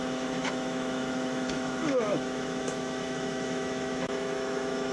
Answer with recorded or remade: remade